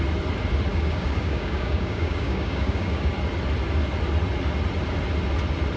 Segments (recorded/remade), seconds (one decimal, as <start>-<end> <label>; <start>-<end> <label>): 0.0-0.7 recorded; 0.7-3.1 remade; 3.1-5.8 recorded